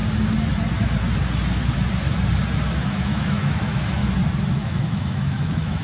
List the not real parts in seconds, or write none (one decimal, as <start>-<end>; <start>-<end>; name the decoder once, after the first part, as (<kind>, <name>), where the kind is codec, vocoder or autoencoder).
2.8-4.0 (autoencoder, DAC-VAE); 4.5-5.8